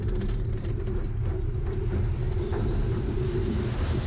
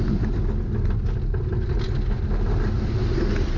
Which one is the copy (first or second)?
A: first